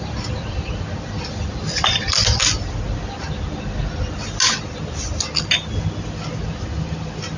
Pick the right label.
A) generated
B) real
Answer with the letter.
B